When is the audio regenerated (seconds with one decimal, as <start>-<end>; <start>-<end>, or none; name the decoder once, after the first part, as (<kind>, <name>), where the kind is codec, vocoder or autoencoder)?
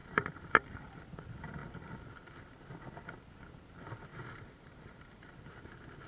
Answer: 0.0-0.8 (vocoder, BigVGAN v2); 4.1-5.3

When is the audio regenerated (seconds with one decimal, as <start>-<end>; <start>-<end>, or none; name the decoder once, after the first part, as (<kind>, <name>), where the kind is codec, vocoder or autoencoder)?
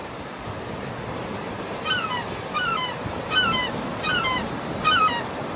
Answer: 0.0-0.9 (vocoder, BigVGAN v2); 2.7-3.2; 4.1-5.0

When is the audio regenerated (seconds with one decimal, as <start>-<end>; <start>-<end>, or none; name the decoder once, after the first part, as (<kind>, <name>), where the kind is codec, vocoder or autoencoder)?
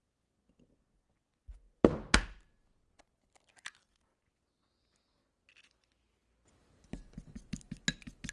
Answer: none